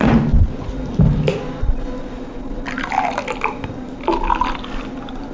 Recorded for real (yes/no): yes